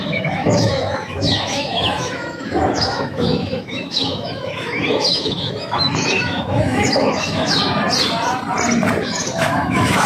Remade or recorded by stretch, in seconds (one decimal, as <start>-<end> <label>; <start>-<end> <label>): 0.0-7.6 remade; 7.6-9.0 recorded; 9.0-10.1 remade